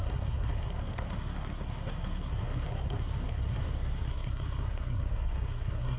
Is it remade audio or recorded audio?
remade